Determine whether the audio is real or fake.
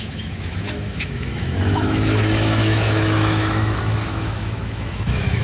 fake